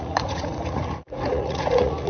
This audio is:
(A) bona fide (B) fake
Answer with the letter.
B